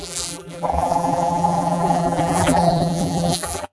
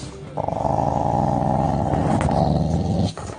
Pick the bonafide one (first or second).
second